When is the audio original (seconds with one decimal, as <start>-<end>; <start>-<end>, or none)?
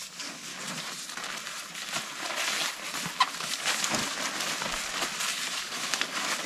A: 0.5-3.4; 4.0-5.6